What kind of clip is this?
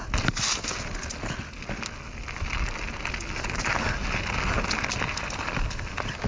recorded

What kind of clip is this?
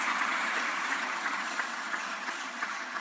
remade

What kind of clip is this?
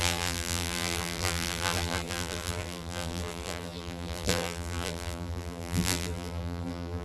remade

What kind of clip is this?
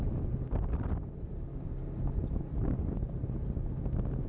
recorded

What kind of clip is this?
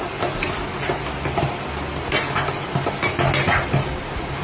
recorded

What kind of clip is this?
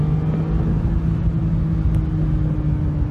recorded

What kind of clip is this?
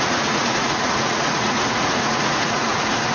remade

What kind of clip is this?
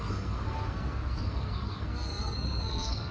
remade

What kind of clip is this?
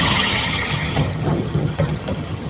remade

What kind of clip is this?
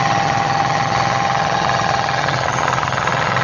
remade